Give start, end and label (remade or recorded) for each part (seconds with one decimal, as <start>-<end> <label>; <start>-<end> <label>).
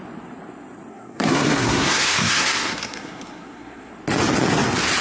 0.0-0.9 recorded; 0.9-3.9 remade; 3.9-5.0 recorded